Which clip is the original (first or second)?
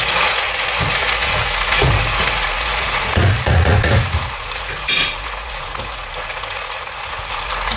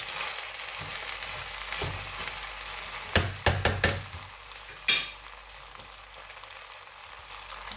second